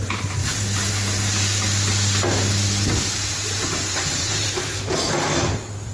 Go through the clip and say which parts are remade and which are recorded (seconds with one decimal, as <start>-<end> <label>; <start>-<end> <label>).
0.0-0.4 remade; 0.4-3.0 recorded; 3.0-5.9 remade